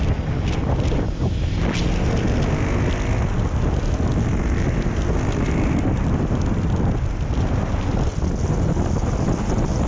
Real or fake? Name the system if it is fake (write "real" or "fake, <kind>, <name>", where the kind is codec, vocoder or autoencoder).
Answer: real